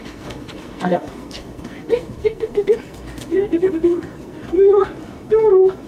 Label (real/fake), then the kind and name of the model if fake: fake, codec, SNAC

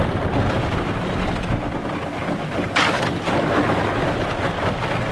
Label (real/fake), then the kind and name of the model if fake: real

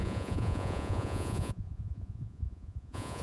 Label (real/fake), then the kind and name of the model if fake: fake, vocoder, Vocos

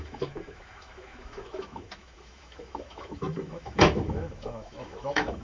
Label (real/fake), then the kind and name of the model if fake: fake, autoencoder, DAC-VAE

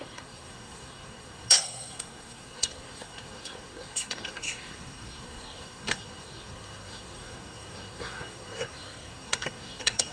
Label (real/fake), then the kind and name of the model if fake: fake, codec, SNAC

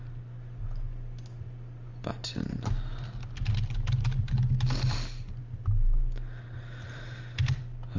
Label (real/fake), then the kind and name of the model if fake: real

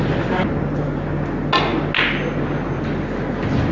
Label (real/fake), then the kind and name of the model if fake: real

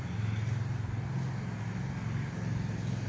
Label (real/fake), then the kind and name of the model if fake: real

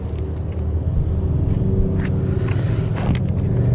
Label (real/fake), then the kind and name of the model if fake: real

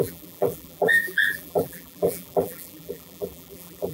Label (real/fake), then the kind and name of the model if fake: fake, vocoder, BigVGAN v2